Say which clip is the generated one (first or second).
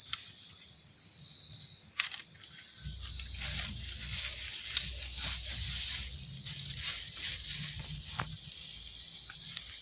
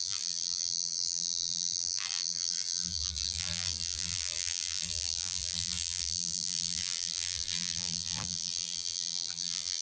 second